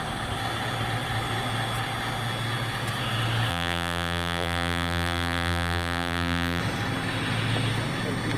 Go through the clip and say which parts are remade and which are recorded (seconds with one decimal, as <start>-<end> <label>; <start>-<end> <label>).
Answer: 0.0-3.5 recorded; 3.5-6.6 remade; 6.6-8.4 recorded